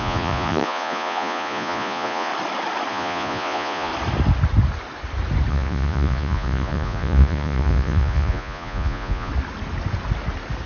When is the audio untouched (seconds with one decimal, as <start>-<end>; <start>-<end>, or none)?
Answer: 2.3-2.9; 3.9-5.5; 9.3-10.7